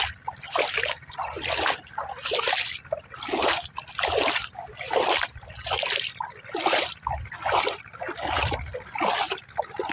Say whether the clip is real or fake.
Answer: fake